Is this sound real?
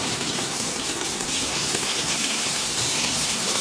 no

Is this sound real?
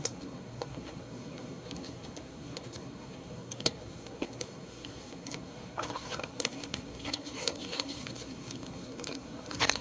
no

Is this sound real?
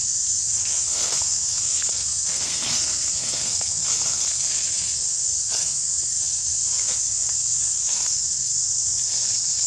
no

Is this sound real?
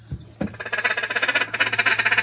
yes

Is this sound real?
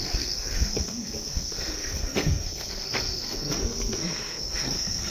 no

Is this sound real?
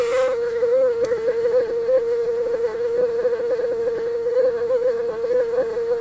no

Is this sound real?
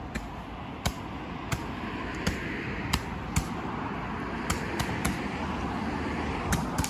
yes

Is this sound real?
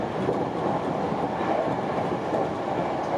yes